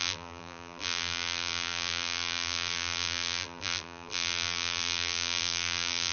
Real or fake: fake